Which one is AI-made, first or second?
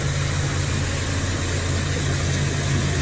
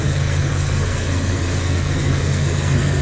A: second